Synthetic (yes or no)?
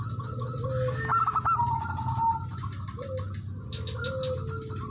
no